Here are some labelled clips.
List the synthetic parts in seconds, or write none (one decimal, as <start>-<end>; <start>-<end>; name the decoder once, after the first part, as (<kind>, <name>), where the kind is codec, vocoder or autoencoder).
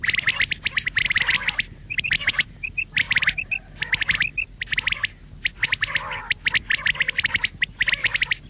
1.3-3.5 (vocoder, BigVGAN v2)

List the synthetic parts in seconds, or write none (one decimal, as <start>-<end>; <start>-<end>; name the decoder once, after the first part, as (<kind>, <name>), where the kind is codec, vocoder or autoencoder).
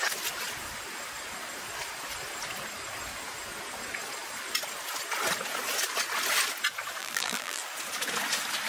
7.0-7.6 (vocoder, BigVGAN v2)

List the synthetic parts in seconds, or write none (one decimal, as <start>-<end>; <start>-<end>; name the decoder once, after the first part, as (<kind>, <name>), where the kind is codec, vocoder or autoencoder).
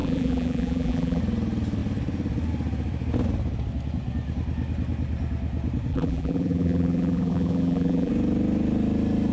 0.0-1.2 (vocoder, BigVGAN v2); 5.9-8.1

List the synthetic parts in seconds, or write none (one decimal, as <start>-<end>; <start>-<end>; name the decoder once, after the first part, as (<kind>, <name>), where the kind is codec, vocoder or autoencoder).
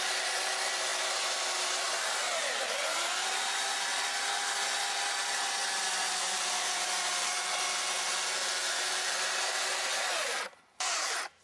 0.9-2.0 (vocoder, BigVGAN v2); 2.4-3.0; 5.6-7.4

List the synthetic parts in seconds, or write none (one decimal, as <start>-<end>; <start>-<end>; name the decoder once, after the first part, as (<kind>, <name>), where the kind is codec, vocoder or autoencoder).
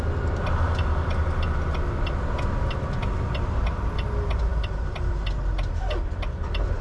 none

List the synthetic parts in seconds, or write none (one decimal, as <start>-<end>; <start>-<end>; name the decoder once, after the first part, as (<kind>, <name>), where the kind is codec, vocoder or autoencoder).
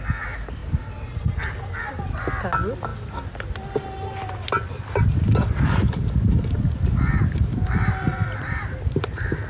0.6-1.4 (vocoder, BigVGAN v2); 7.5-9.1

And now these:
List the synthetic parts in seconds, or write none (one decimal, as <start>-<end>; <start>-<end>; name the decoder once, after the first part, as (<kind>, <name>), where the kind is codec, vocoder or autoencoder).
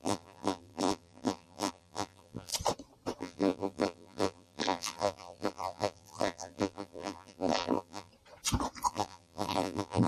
0.0-2.5 (vocoder, BigVGAN v2); 3.2-8.1; 8.9-10.1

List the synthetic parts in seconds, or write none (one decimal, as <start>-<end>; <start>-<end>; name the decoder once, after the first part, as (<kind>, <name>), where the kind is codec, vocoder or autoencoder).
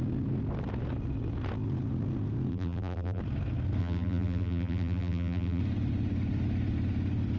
2.5-3.2 (vocoder, BigVGAN v2); 3.8-5.6